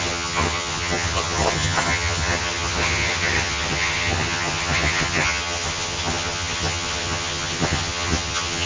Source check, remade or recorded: remade